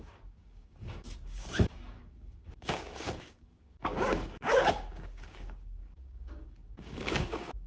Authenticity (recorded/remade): remade